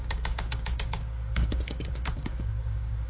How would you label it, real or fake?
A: fake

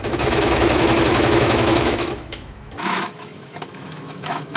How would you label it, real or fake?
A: fake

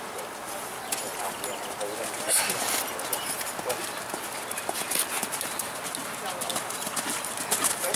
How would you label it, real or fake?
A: real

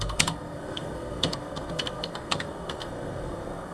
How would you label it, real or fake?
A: fake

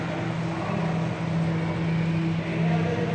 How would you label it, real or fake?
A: real